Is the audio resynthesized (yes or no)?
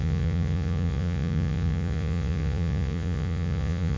yes